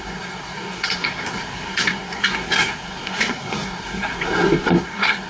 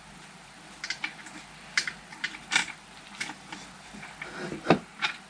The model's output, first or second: first